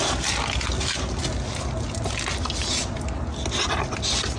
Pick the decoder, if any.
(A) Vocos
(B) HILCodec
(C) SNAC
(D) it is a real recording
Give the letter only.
D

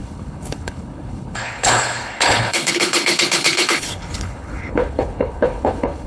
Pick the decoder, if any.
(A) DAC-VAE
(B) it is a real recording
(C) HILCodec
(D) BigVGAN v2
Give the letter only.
C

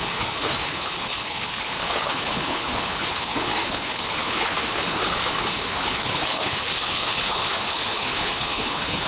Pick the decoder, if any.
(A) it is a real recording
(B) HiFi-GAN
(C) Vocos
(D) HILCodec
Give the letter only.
D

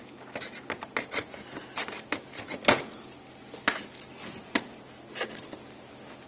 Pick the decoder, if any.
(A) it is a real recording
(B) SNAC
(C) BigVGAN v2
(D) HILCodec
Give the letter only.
A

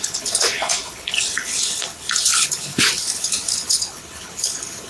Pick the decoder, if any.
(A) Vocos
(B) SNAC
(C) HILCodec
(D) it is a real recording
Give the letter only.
C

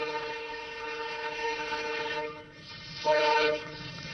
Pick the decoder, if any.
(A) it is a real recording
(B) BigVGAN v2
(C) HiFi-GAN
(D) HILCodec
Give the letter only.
D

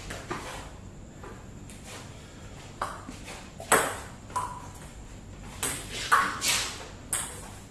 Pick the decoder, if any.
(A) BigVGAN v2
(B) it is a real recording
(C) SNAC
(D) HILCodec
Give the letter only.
B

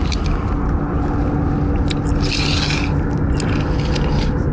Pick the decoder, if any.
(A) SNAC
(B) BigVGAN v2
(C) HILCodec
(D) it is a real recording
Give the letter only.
D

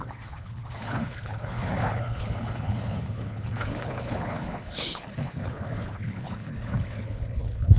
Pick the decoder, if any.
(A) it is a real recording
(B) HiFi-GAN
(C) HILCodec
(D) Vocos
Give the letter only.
C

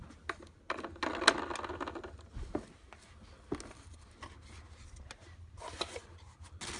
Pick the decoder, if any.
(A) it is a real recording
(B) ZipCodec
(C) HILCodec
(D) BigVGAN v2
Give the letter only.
A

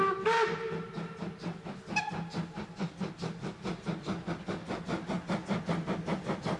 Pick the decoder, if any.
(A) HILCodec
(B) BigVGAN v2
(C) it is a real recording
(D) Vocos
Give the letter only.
C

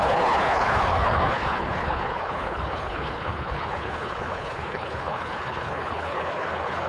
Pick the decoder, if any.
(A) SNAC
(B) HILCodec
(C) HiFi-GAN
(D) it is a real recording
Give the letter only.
B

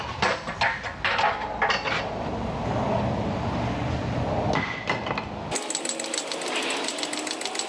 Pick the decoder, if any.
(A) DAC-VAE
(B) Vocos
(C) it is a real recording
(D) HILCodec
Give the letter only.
C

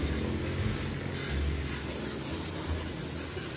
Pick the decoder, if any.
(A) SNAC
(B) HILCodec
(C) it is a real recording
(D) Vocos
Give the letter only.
C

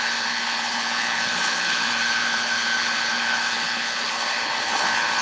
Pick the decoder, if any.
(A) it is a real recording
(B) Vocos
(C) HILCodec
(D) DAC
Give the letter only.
C